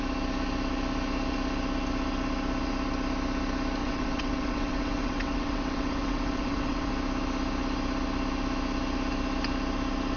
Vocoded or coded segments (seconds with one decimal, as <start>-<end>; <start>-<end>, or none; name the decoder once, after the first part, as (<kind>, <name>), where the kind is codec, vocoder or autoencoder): 3.8-6.9 (vocoder, WaveNeXt)